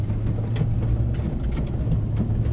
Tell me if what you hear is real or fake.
real